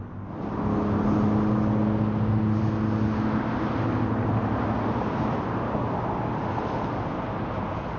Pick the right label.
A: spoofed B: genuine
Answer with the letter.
B